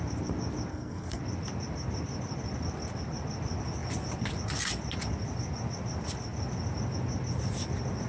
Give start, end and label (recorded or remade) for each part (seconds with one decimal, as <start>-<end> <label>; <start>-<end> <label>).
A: 0.0-0.7 recorded; 0.7-1.2 remade; 1.2-8.1 recorded